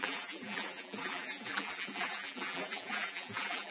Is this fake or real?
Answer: fake